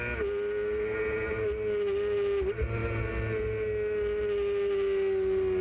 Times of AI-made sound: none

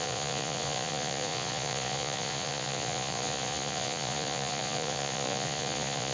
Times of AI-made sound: 0.0-6.1 (vocoder, Vocos)

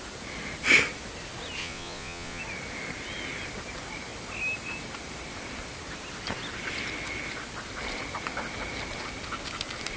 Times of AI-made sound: 1.6-2.4 (vocoder, Vocos)

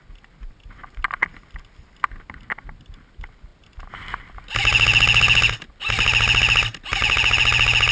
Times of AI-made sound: none

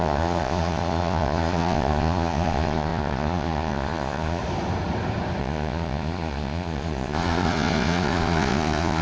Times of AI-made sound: 0.0-4.4 (vocoder, Vocos); 5.4-9.0

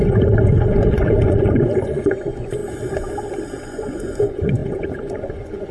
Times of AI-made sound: 0.0-2.6 (vocoder, Vocos); 3.6-5.7

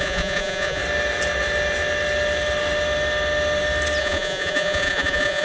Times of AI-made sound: 0.0-0.8 (vocoder, Vocos); 4.0-5.4